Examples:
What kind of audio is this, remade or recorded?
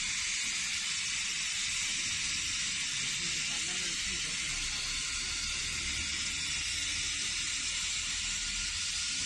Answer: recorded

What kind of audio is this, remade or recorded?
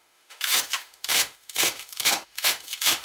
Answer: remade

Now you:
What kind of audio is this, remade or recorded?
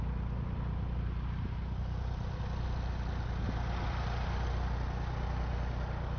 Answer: recorded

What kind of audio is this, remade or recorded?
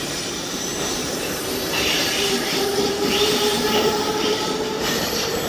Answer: remade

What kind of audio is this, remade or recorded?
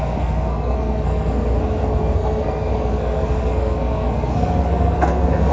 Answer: remade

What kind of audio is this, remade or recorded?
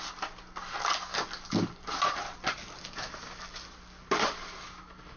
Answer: recorded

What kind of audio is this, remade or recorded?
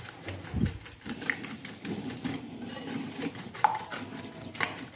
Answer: recorded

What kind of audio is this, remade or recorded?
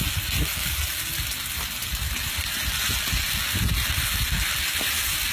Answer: recorded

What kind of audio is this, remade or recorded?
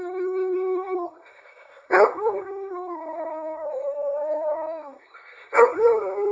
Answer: remade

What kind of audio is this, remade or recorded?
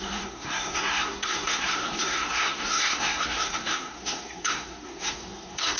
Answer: remade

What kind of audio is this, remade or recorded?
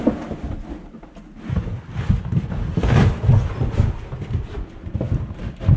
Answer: recorded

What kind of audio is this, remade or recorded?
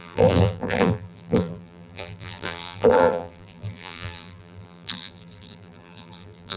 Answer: remade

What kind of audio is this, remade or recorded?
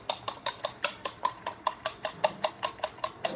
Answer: recorded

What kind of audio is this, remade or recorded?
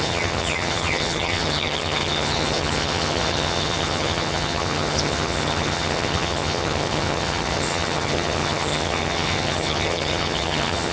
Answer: remade